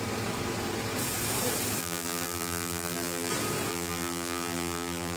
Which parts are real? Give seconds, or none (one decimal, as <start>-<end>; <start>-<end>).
0.0-1.8; 3.3-3.7